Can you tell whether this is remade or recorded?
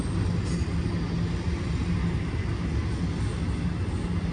recorded